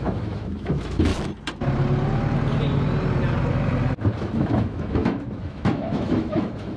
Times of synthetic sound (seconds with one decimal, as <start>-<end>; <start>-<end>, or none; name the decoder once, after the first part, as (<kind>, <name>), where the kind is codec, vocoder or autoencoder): 0.0-1.1 (autoencoder, DAC-VAE); 4.2-6.8